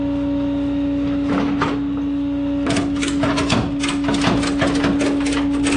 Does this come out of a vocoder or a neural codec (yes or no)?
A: no